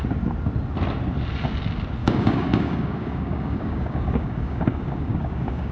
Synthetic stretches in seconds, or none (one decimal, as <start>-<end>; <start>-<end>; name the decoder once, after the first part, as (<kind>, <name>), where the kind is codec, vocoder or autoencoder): 2.0-5.7 (codec, DAC)